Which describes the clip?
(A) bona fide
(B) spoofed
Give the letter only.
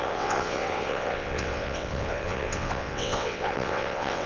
B